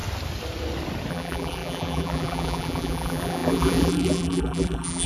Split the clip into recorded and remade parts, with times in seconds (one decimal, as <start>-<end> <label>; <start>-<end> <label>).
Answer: 0.0-1.1 recorded; 1.1-5.1 remade